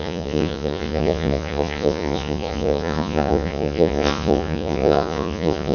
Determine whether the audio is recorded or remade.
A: remade